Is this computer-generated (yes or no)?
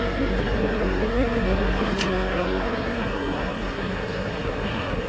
yes